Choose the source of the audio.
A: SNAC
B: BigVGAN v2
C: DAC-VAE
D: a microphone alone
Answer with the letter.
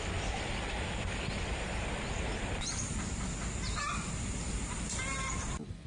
D